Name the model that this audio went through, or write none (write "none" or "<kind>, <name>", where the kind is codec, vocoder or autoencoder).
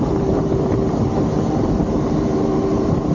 vocoder, BigVGAN v2